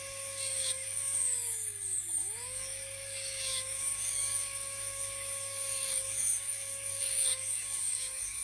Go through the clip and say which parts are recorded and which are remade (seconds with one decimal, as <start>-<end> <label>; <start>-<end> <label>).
0.0-8.4 remade